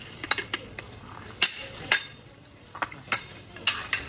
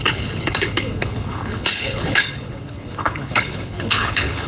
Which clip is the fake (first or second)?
second